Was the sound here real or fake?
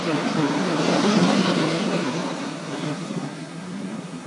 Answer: fake